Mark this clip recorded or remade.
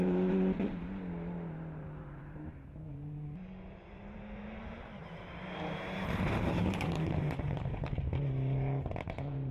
remade